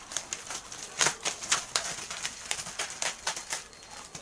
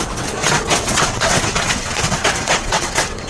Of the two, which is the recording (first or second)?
first